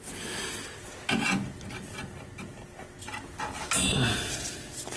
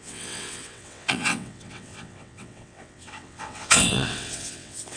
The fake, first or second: second